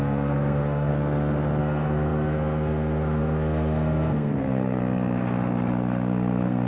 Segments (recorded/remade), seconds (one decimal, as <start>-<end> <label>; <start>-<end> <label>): 0.0-0.9 remade; 0.9-1.6 recorded; 1.6-4.8 remade; 4.8-5.7 recorded; 5.7-6.7 remade